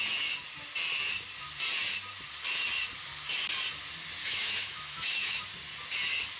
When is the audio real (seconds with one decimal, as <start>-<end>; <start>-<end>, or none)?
0.0-4.2; 5.4-6.4